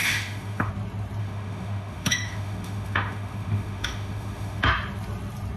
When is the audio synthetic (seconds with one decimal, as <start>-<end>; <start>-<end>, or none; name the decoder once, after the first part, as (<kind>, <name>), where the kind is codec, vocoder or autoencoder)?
0.0-0.7 (autoencoder, DAC-VAE); 1.2-4.6

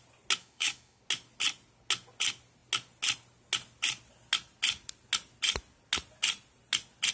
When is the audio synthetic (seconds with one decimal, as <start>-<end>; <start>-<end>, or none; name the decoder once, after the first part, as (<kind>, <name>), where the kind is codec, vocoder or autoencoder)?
0.4-1.0 (autoencoder, DAC-VAE)

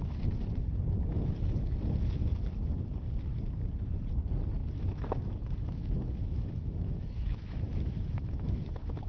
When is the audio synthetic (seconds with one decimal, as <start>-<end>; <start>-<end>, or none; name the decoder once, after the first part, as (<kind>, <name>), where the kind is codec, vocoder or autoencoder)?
4.6-9.1 (autoencoder, DAC-VAE)